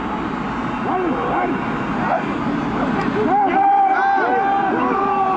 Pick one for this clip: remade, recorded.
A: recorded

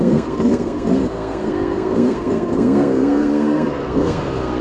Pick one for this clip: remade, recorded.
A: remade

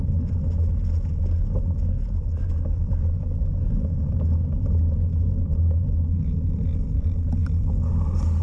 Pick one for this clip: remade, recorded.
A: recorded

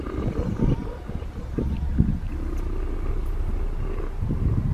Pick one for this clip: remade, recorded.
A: recorded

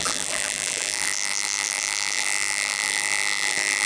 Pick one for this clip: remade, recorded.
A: remade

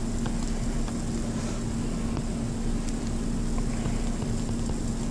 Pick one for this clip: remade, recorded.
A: recorded